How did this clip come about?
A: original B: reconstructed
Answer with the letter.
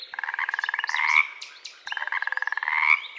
A